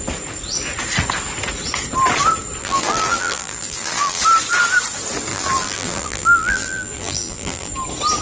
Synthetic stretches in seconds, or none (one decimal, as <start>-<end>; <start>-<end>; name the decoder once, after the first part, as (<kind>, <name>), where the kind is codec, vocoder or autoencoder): 2.6-4.2 (vocoder, BigVGAN v2); 5.3-7.7